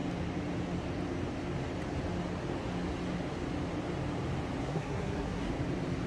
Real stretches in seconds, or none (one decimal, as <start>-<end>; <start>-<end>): 0.0-4.6; 5.5-6.1